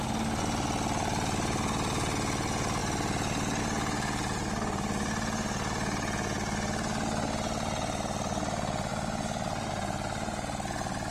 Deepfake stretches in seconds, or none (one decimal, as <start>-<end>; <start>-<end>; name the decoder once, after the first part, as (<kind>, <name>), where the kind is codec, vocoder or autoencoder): 8.9-9.7 (vocoder, BigVGAN v2)